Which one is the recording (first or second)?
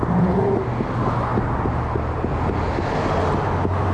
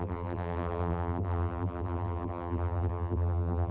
first